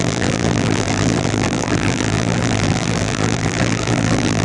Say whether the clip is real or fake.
fake